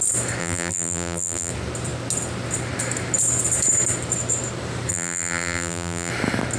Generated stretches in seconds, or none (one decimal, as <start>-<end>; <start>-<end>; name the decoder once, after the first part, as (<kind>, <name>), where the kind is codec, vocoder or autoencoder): 0.4-1.5 (vocoder, BigVGAN v2); 4.9-6.1

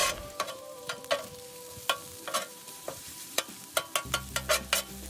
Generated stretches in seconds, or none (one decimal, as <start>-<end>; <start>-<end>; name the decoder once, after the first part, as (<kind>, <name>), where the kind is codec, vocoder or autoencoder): 0.0-1.0 (vocoder, BigVGAN v2); 2.5-3.4

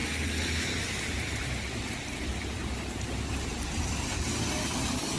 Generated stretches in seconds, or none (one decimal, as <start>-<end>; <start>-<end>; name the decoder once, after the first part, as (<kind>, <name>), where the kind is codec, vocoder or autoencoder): none

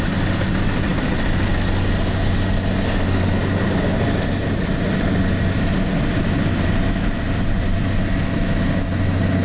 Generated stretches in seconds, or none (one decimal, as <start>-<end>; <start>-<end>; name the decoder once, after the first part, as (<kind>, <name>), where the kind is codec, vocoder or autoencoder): 3.9-8.0 (vocoder, BigVGAN v2)

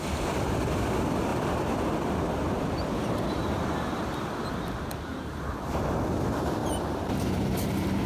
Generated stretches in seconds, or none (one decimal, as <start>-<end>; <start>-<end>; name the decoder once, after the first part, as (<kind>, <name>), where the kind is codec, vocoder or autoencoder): 5.1-6.0 (vocoder, BigVGAN v2); 6.6-8.1

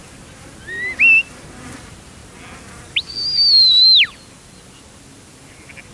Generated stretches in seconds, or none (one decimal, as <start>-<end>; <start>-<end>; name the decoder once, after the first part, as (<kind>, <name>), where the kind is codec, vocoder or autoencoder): 1.8-2.2 (vocoder, BigVGAN v2)

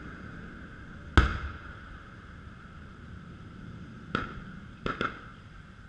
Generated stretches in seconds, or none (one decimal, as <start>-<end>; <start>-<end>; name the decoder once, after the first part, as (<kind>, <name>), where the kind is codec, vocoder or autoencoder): 1.3-3.3 (vocoder, BigVGAN v2); 5.3-5.9